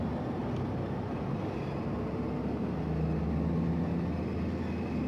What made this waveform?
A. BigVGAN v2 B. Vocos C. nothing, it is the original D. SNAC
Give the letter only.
C